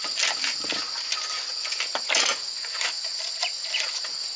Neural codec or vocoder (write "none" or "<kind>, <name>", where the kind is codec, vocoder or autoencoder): none